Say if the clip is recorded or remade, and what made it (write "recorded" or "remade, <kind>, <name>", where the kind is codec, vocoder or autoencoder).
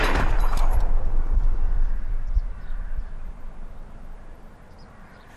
remade, vocoder, BigVGAN v2